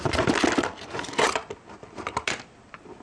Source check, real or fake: fake